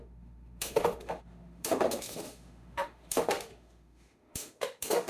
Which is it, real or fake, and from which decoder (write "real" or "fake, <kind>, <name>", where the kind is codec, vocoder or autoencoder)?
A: fake, autoencoder, DAC-VAE